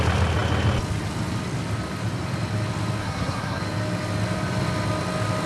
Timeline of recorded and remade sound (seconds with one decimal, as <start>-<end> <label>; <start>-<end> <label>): 0.0-3.0 recorded; 3.0-3.6 remade; 3.6-5.5 recorded